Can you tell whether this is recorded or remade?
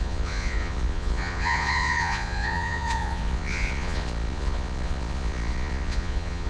remade